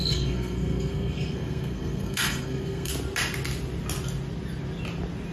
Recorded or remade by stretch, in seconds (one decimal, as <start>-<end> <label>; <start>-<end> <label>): 0.0-2.9 remade; 2.9-5.3 recorded